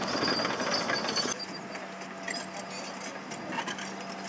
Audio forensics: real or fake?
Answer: real